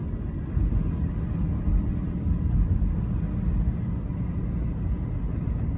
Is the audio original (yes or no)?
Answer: yes